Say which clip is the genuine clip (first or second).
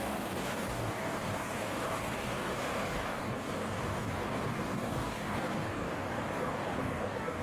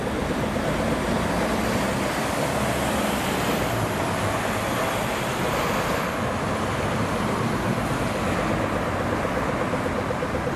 second